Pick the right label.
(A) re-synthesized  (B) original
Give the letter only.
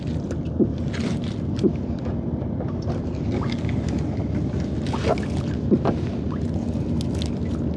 B